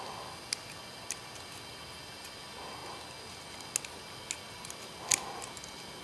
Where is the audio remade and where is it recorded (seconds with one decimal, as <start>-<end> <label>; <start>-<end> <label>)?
0.0-6.0 recorded